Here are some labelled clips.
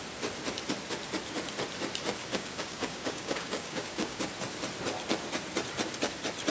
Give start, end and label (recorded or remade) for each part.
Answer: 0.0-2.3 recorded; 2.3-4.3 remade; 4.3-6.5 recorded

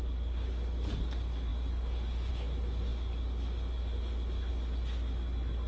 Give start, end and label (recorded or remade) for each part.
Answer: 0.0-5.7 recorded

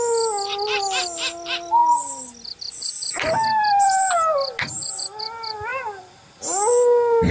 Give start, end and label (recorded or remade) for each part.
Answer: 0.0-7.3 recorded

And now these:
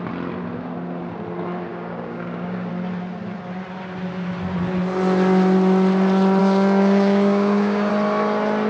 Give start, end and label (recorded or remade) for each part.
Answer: 0.0-1.7 recorded; 1.7-2.7 remade; 2.7-6.4 recorded; 6.4-7.9 remade; 7.9-8.7 recorded

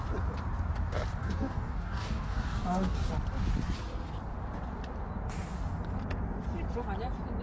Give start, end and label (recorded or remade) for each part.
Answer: 0.0-1.2 recorded; 1.2-3.1 remade; 3.1-7.4 recorded